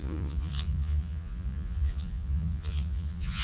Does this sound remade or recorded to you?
remade